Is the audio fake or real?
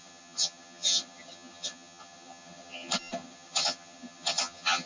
fake